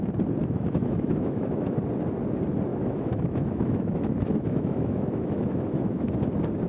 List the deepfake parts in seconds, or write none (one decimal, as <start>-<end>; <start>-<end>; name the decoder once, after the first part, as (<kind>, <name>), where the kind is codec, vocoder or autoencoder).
0.4-1.8 (autoencoder, DAC-VAE); 2.7-6.2